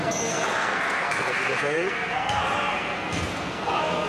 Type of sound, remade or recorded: remade